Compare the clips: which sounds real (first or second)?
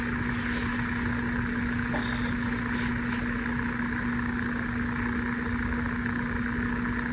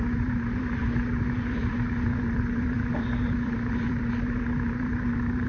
first